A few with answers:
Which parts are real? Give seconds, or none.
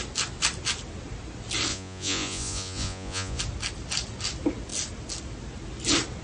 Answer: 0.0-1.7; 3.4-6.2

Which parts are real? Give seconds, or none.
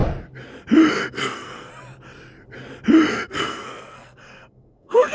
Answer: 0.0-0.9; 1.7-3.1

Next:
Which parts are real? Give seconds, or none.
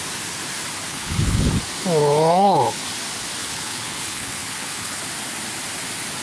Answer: 0.0-0.9; 1.5-2.0; 2.8-3.4; 5.0-6.2